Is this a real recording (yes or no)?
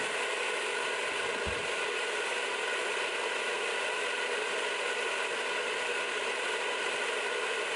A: yes